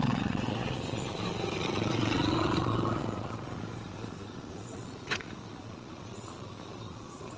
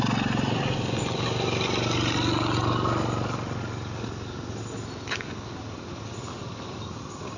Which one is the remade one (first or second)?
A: first